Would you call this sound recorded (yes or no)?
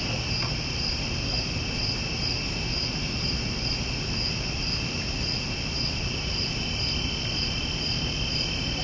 yes